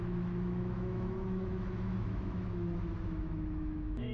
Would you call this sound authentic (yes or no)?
no